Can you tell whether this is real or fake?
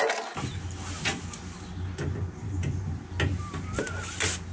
real